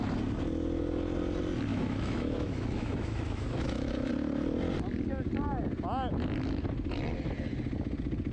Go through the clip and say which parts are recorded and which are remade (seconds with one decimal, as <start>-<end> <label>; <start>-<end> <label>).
0.0-1.7 recorded; 1.7-4.1 remade; 4.1-8.3 recorded

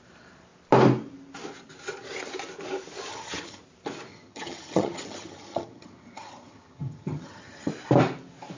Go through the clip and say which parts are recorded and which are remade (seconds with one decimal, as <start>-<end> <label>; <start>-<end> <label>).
0.0-3.1 recorded; 3.1-3.6 remade; 3.6-4.1 recorded; 4.1-7.7 remade; 7.7-8.6 recorded